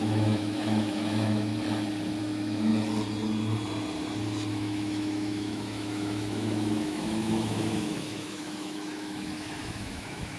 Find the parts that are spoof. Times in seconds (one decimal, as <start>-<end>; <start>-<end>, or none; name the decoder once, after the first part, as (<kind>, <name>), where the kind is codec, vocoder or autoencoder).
0.0-1.5 (autoencoder, DAC-VAE); 2.2-2.7; 4.5-10.4